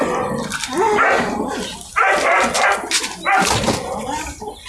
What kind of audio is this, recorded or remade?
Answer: recorded